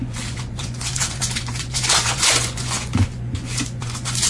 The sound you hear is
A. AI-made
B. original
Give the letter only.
A